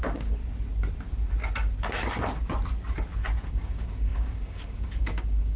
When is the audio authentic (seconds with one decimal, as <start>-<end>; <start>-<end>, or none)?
0.4-3.5